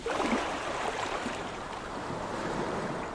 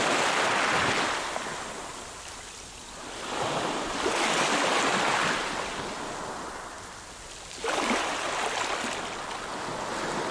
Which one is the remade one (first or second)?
first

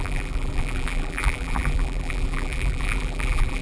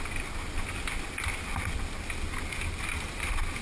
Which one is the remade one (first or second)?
first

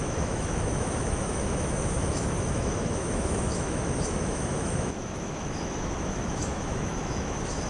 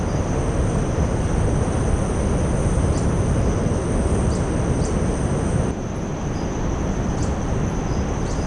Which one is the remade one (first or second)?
first